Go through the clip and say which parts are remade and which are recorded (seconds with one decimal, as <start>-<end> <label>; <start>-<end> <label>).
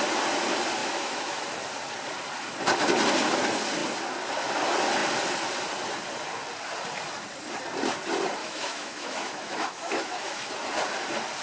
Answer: 0.0-0.8 recorded; 0.8-1.4 remade; 1.4-8.4 recorded; 8.4-10.5 remade; 10.5-11.4 recorded